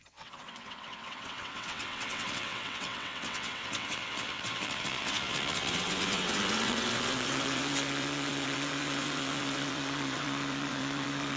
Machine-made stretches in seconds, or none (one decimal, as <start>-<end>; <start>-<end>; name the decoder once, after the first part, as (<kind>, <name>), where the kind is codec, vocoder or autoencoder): 0.0-11.4 (vocoder, WaveNeXt)